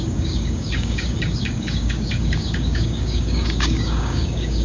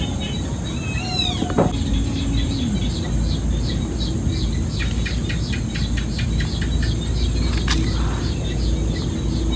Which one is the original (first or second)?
second